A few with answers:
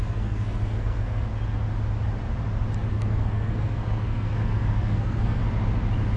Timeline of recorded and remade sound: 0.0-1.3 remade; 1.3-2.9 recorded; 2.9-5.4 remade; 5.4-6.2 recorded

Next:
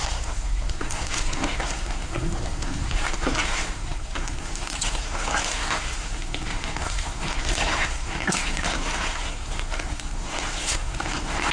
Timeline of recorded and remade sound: 0.0-11.5 remade

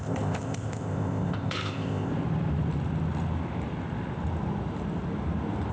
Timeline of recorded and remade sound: 0.0-2.1 remade; 2.1-5.7 recorded

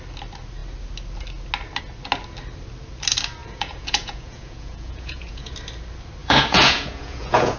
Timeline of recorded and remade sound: 0.0-3.4 recorded; 3.4-5.5 remade; 5.5-6.2 recorded; 6.2-7.6 remade

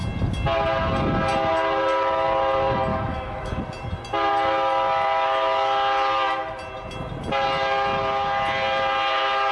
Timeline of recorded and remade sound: 0.0-2.9 recorded; 2.9-3.6 remade; 3.6-9.5 recorded

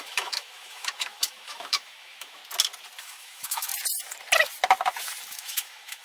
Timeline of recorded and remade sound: 0.0-2.4 remade; 2.4-3.0 recorded; 3.0-3.7 remade; 3.7-5.3 recorded; 5.3-6.0 remade

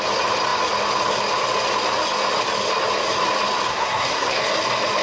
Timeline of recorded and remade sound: 0.0-3.7 recorded; 3.7-4.4 remade; 4.4-5.0 recorded

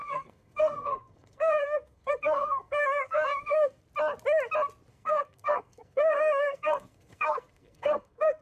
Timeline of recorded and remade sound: 0.0-3.8 remade; 3.8-4.9 recorded; 4.9-8.4 remade